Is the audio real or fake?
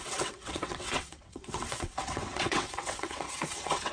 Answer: fake